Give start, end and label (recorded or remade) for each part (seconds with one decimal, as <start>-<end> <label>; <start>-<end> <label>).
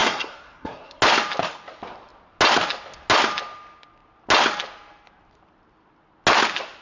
0.0-1.0 remade; 1.0-6.8 recorded